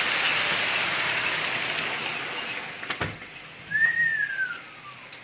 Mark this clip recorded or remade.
recorded